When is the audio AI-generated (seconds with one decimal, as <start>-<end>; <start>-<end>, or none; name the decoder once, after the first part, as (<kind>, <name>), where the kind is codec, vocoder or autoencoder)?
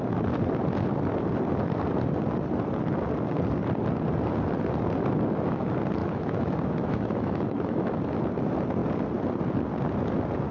6.0-8.0 (autoencoder, DAC-VAE)